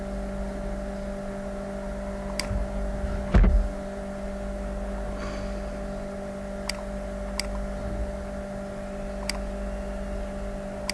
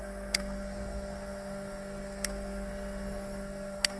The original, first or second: first